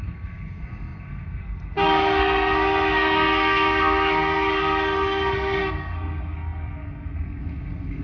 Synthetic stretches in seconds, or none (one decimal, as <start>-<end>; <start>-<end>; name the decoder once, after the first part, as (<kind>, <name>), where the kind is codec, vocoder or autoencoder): 0.0-8.0 (codec, SNAC)